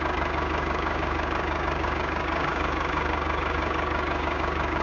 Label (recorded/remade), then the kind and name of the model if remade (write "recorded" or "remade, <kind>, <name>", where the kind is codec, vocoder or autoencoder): remade, codec, DAC